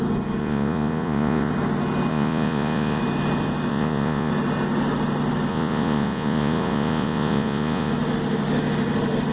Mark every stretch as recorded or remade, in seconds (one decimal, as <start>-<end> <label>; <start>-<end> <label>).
0.0-0.4 recorded; 0.4-1.5 remade; 1.5-2.1 recorded; 2.1-3.0 remade; 3.0-3.7 recorded; 3.7-4.3 remade; 4.3-5.5 recorded; 5.5-7.9 remade; 7.9-9.3 recorded